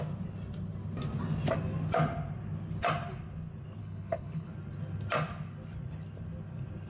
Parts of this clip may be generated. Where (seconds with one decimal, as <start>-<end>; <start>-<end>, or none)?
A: 3.8-4.5